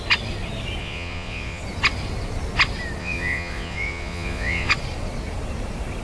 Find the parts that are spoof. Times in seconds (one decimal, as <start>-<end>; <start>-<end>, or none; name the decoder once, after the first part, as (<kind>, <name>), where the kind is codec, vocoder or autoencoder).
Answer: 0.8-1.6 (vocoder, Vocos); 3.0-4.7